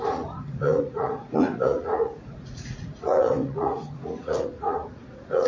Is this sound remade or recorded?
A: remade